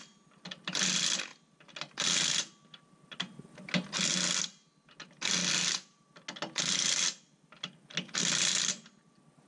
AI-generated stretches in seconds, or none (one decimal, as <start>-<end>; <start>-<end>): none